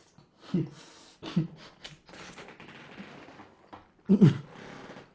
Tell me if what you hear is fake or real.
real